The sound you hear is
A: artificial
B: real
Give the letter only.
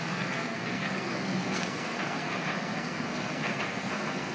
A